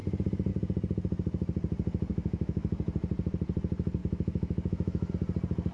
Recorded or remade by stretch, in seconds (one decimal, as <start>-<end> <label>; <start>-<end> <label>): 0.0-2.1 recorded; 2.1-2.7 remade; 2.7-4.0 recorded; 4.0-5.1 remade; 5.1-5.7 recorded